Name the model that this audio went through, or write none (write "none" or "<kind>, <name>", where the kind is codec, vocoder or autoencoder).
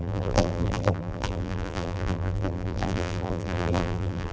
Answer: vocoder, BigVGAN v2